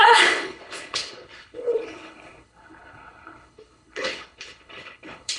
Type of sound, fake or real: fake